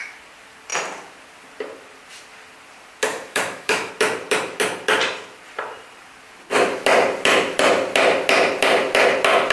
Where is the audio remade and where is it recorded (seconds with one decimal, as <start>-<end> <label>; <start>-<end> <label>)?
0.0-3.1 recorded; 3.1-3.9 remade; 3.9-9.5 recorded